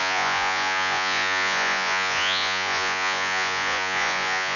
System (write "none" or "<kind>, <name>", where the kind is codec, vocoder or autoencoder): vocoder, Vocos